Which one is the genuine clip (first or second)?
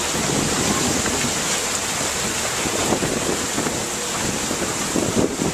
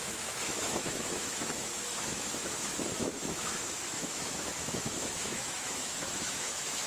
first